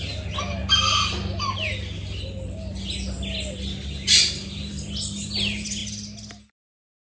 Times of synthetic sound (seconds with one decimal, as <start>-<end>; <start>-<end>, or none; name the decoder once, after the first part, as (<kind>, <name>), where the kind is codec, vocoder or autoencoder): none